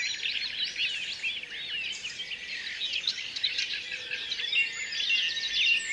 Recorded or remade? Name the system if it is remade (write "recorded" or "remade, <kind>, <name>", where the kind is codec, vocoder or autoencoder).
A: recorded